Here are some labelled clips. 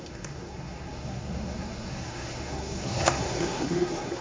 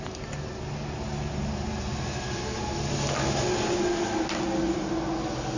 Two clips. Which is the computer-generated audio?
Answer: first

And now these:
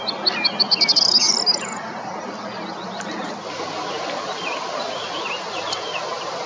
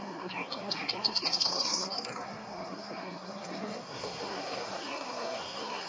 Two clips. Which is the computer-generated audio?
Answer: second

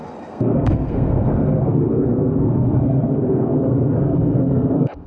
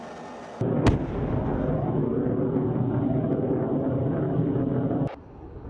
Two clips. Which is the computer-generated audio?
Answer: first